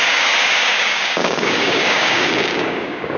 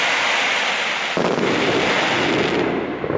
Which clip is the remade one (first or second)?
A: first